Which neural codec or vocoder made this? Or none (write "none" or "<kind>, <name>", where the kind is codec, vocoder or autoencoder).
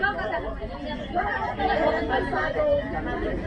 none